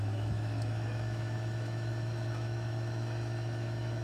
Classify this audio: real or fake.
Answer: fake